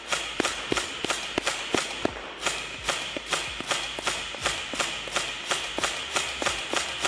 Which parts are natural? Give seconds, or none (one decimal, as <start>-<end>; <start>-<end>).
0.0-7.1

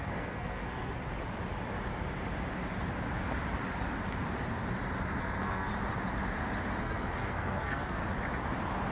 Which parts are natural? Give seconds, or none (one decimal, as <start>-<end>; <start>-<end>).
1.0-5.2; 5.7-6.8; 8.0-8.9

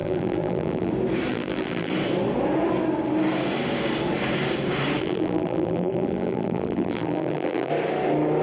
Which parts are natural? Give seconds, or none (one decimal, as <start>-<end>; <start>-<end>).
0.9-1.3; 1.9-5.0; 7.7-8.4

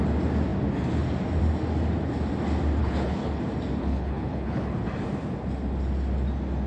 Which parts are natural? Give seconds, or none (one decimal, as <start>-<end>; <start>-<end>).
0.0-2.8; 3.4-3.8; 4.8-6.7

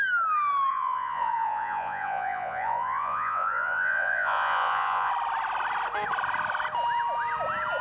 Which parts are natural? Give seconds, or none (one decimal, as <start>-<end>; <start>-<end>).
0.0-0.7; 5.1-7.8

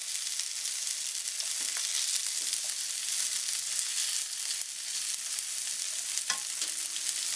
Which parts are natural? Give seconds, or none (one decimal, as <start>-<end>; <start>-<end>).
0.0-7.4